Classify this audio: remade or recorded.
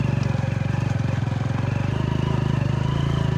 recorded